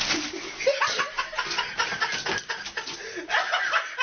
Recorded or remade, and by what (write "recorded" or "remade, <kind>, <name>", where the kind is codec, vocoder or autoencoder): recorded